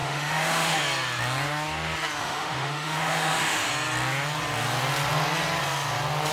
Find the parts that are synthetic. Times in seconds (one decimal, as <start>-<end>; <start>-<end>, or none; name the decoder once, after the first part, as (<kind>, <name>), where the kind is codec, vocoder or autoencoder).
0.0-0.8 (autoencoder, DAC-VAE); 2.2-3.7